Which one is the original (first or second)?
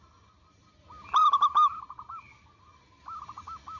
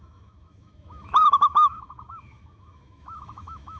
first